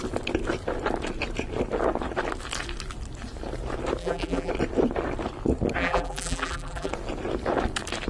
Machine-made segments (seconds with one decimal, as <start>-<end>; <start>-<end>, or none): 4.0-4.5; 5.8-6.9